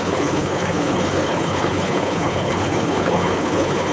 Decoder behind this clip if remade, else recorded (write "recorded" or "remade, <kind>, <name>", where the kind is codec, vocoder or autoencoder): remade, codec, HILCodec